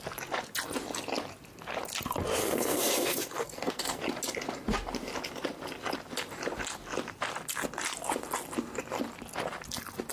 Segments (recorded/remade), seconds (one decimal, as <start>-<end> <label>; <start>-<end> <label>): 0.0-2.4 recorded; 2.4-4.0 remade; 4.0-10.1 recorded